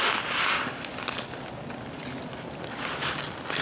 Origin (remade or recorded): recorded